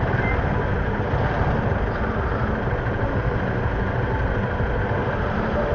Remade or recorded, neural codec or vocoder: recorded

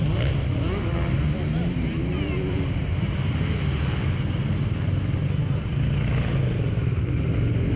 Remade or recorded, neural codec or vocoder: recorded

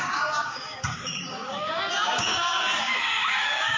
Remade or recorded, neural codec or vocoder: remade, codec, DAC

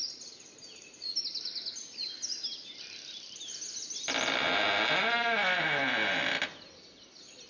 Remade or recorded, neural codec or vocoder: recorded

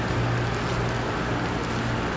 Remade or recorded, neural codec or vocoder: recorded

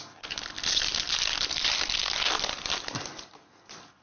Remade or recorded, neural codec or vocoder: recorded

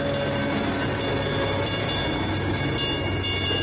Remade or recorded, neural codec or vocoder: recorded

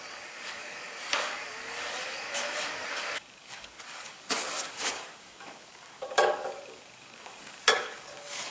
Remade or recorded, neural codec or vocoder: remade, codec, DAC